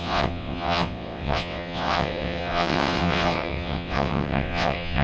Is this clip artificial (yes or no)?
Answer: yes